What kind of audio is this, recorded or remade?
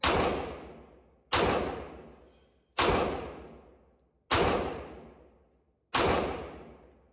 recorded